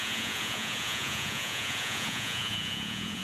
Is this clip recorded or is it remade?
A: remade